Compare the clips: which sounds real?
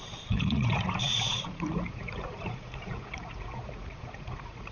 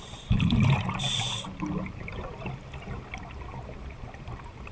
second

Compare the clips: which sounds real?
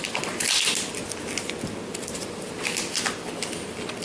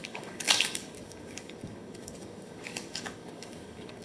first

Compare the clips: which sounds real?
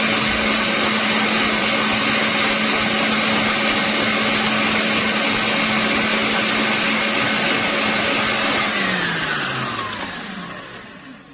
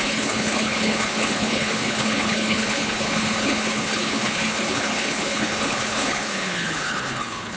first